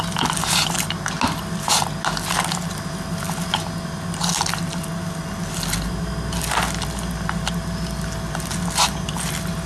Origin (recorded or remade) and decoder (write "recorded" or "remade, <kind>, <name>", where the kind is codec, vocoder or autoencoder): recorded